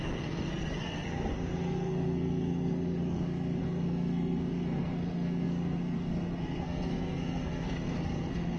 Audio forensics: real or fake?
fake